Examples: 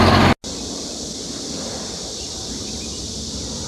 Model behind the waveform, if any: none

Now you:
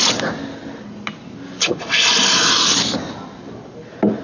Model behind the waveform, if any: none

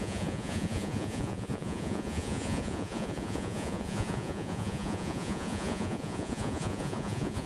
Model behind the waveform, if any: vocoder, Vocos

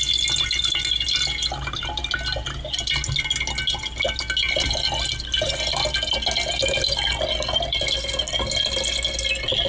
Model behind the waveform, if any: none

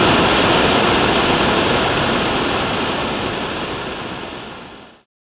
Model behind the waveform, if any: none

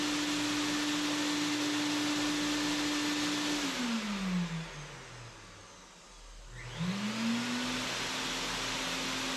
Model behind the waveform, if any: none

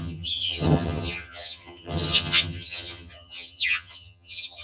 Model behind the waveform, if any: vocoder, HiFi-GAN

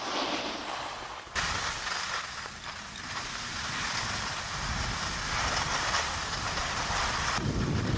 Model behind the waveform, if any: none